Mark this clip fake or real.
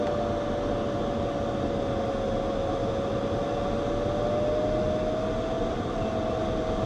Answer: real